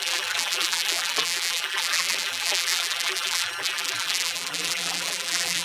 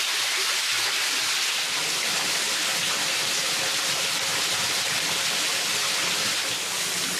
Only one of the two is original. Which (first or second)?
second